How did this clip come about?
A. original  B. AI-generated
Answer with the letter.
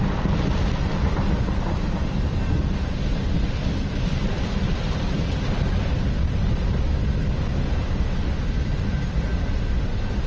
A